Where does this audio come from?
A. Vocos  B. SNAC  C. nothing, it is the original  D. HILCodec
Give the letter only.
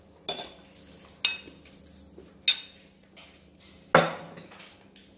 C